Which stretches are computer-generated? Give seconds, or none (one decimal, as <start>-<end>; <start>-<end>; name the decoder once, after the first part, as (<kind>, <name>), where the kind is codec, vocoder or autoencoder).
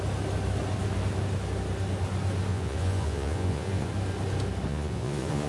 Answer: 2.5-3.9 (vocoder, Vocos); 4.7-5.5